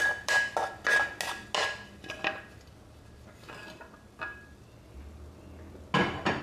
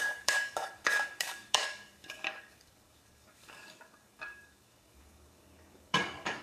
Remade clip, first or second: second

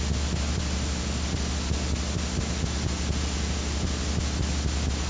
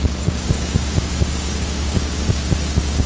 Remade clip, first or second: second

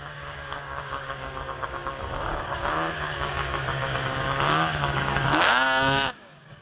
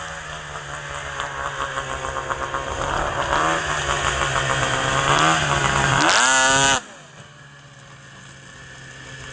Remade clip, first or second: first